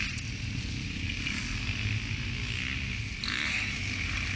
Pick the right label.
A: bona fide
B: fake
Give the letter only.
A